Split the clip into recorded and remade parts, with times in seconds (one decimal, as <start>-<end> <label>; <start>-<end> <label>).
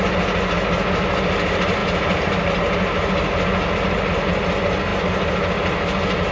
0.0-1.8 recorded; 1.8-2.6 remade; 2.6-6.3 recorded